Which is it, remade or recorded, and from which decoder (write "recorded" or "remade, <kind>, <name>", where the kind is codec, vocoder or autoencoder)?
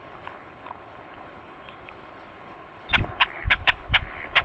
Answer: remade, codec, HILCodec